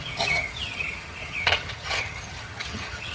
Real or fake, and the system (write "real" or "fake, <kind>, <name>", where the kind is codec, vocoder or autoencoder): fake, vocoder, HiFi-GAN